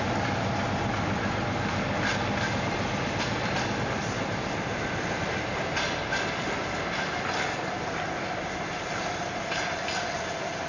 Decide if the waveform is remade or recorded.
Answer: recorded